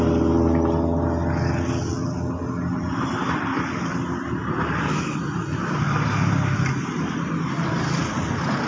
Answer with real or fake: real